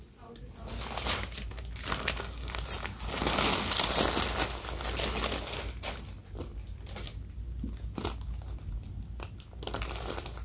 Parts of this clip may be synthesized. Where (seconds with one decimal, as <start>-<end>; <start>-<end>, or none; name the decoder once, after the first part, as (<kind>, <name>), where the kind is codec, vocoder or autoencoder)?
none